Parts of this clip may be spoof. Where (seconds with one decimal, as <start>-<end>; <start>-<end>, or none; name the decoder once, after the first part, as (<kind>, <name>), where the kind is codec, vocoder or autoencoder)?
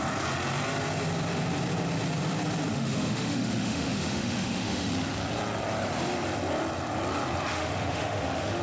2.7-4.9 (autoencoder, DAC-VAE); 7.5-8.6